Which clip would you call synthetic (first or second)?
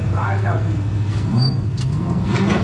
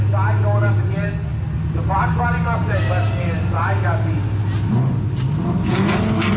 first